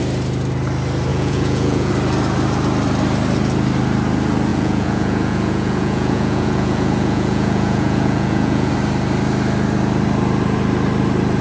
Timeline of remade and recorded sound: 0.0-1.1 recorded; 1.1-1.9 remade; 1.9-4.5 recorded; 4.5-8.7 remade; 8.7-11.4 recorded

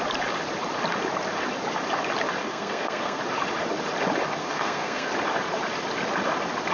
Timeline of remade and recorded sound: 0.0-2.4 recorded; 2.4-3.2 remade; 3.2-4.4 recorded; 4.4-5.1 remade; 5.1-6.7 recorded

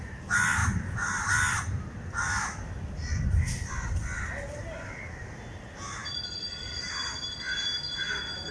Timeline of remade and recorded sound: 0.0-8.5 recorded

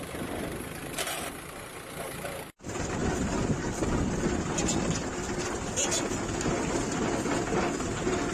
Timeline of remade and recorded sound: 0.0-8.3 recorded